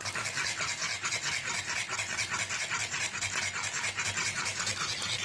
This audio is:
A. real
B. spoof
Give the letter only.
A